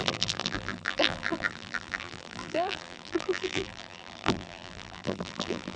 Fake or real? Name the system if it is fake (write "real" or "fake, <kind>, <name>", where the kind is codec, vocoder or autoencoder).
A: fake, vocoder, BigVGAN v2